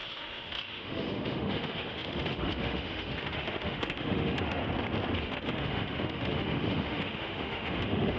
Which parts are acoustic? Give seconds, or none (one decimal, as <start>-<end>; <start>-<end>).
4.6-5.2